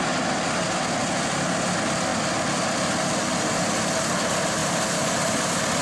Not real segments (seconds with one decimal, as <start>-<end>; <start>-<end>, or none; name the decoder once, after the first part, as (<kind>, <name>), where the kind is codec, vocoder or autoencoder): none